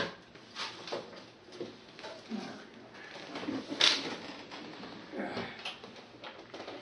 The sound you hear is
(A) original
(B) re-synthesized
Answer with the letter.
A